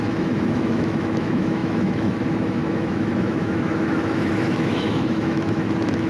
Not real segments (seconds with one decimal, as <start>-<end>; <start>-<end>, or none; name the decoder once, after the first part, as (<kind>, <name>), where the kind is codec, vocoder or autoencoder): 0.0-6.1 (autoencoder, DAC-VAE)